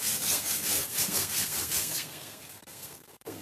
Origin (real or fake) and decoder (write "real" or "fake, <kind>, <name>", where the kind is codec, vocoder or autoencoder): fake, codec, SNAC